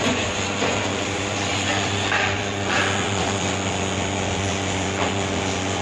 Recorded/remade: remade